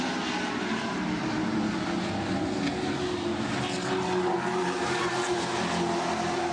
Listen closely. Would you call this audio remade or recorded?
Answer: recorded